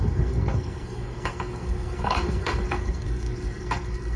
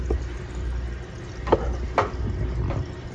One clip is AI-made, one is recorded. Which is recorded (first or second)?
second